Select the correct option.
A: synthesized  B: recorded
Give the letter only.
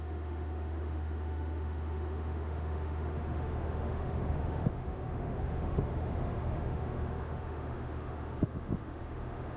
A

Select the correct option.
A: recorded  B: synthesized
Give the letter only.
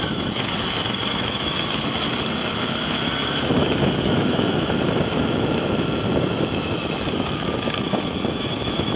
B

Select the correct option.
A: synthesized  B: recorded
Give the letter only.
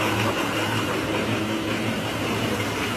B